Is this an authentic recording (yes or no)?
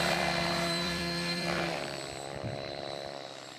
no